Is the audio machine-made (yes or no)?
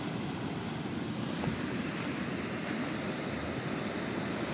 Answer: no